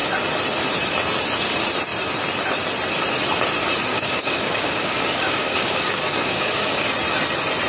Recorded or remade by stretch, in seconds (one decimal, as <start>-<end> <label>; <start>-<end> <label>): 0.0-3.9 recorded; 3.9-6.8 remade; 6.8-7.7 recorded